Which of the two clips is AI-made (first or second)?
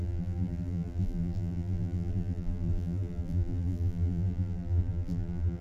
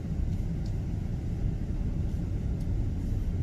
first